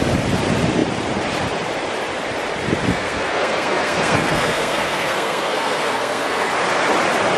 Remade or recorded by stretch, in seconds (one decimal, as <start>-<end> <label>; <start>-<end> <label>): 0.0-2.9 recorded; 2.9-6.5 remade; 6.5-7.4 recorded